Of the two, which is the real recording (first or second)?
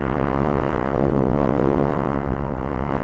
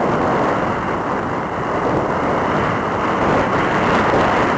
second